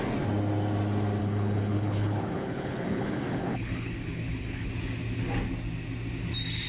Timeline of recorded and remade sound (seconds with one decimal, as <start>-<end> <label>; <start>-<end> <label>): 0.0-1.2 recorded; 1.2-4.7 remade; 4.7-6.7 recorded